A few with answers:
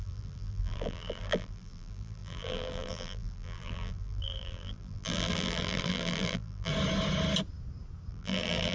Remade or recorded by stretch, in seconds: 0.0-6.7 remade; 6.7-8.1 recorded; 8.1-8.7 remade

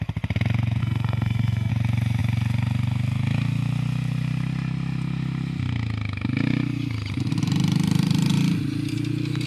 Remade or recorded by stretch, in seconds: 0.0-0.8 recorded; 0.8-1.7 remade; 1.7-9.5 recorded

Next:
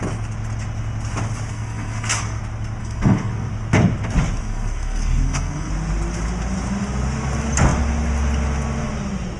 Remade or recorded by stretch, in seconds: 0.0-1.5 recorded; 1.5-2.4 remade; 2.4-2.8 recorded; 2.8-3.5 remade; 3.5-4.4 recorded; 4.4-5.7 remade; 5.7-9.4 recorded

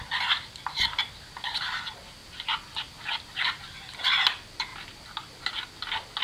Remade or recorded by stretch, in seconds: 0.0-6.2 recorded

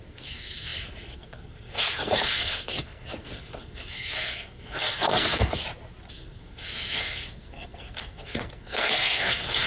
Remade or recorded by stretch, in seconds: 0.0-5.6 remade; 5.6-6.1 recorded; 6.1-9.7 remade